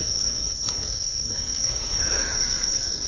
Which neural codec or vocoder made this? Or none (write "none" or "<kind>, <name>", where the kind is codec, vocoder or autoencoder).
codec, SNAC